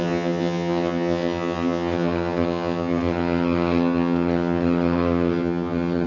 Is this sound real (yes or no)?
no